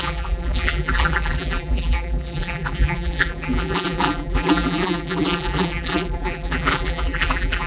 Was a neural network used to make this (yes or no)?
yes